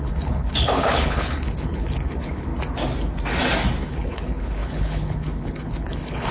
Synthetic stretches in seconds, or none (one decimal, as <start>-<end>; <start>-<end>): 0.0-2.5; 3.8-6.3